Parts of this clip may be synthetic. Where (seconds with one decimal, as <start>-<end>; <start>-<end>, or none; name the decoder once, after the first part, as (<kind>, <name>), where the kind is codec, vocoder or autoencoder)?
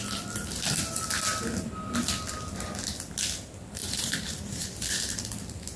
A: 3.8-4.4 (vocoder, BigVGAN v2)